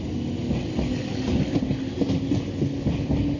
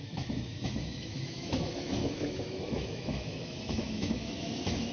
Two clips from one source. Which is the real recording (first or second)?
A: first